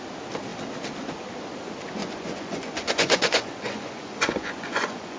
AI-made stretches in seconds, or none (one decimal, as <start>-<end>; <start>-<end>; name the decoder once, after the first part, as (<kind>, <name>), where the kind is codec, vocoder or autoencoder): 2.0-5.2 (vocoder, Vocos)